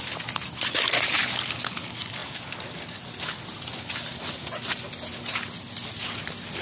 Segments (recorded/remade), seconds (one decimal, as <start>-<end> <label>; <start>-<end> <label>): 0.0-6.6 recorded